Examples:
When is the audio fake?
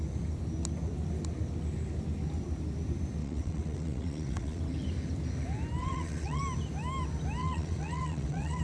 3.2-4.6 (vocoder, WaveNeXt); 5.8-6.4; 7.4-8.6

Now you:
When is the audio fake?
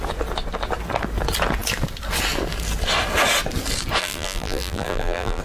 4.0-5.4 (vocoder, BigVGAN v2)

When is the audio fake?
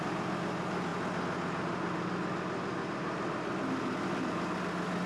none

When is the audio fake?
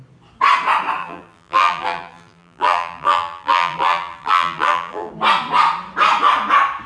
1.0-5.1 (vocoder, BigVGAN v2)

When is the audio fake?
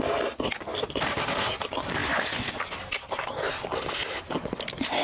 none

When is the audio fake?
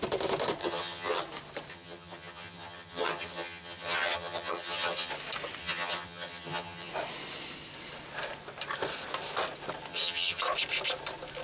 0.6-1.2 (vocoder, HiFi-GAN); 1.7-5.1; 5.6-6.9; 9.9-10.4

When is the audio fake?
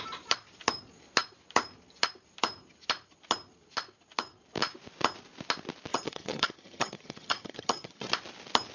5.9-8.1 (vocoder, HiFi-GAN)